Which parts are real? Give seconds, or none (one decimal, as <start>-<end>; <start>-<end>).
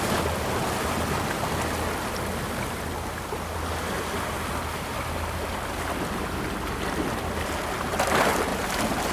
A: 0.0-9.1